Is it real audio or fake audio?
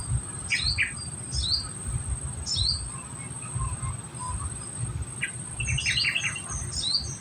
real